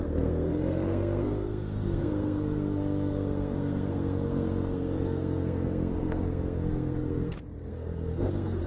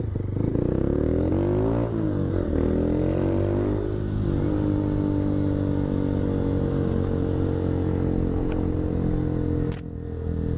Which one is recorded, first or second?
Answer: second